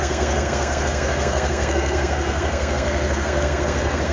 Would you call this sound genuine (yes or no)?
no